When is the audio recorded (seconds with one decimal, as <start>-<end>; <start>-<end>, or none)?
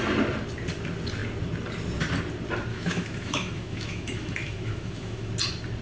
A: 0.0-2.7; 5.3-5.8